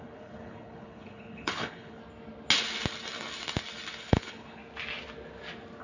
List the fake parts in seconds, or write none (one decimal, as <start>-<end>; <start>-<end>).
0.0-2.0; 4.0-4.6